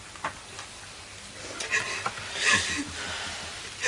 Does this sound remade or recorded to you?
recorded